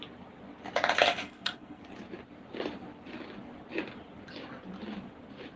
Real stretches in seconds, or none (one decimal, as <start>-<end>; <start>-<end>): 0.0-1.1; 1.8-5.6